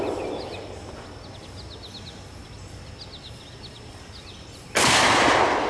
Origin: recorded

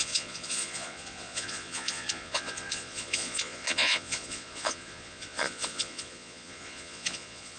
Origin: remade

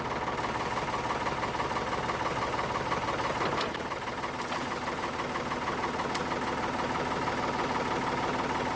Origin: recorded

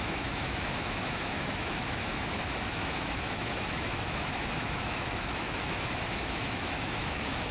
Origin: remade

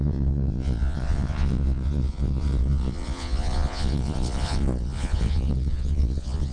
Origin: remade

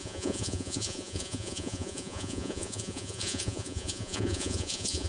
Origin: remade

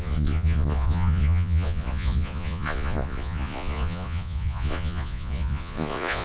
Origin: remade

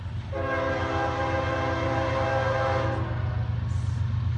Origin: recorded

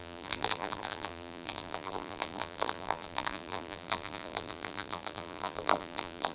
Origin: remade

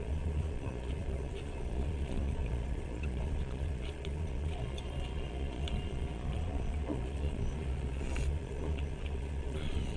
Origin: remade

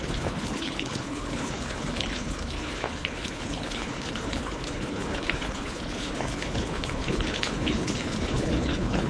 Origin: remade